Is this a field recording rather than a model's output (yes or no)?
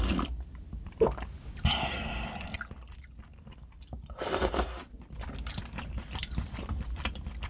no